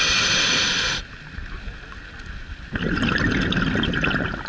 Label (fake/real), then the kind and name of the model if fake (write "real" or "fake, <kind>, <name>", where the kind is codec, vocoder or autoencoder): real